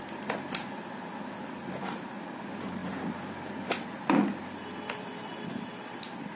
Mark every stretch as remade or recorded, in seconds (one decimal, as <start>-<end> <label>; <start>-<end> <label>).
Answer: 0.0-6.4 recorded